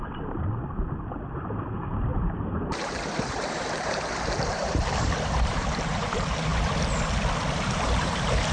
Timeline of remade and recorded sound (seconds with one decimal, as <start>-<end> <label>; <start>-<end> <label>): 0.0-6.5 remade; 6.5-7.5 recorded; 7.5-8.5 remade